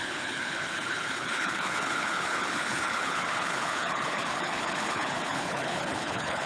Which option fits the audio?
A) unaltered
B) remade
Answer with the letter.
B